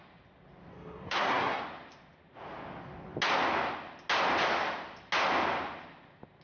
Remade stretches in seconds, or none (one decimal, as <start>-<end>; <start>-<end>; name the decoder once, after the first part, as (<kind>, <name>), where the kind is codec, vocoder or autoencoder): 0.7-1.6 (codec, SNAC)